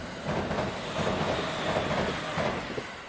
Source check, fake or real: real